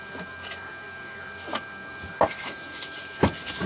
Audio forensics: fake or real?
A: real